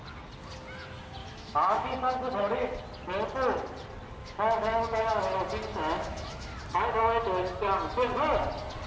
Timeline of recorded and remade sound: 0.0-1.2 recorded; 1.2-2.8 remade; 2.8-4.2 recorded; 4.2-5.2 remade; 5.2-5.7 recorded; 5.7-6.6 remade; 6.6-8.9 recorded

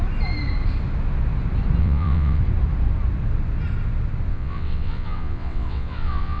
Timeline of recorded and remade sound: 0.0-1.8 recorded; 1.8-2.4 remade; 2.4-4.3 recorded; 4.3-6.4 remade

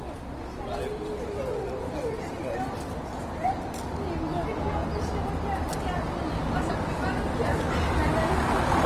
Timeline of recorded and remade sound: 0.0-8.9 recorded

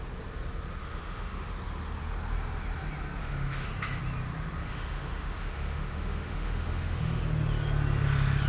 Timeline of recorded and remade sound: 0.0-0.8 recorded; 0.8-1.5 remade; 1.5-3.2 recorded; 3.2-4.0 remade; 4.0-4.6 recorded; 4.6-7.2 remade; 7.2-8.5 recorded

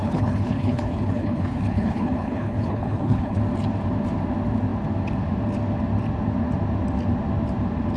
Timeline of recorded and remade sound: 0.0-3.4 remade; 3.4-8.0 recorded